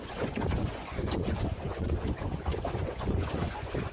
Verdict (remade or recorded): remade